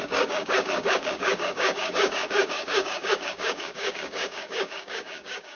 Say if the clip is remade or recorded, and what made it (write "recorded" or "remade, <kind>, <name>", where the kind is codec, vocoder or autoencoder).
remade, codec, DAC